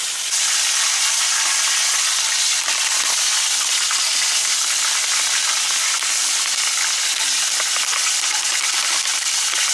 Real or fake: real